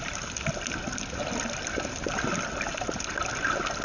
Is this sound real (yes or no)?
yes